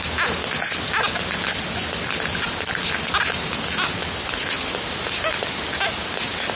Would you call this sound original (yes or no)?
yes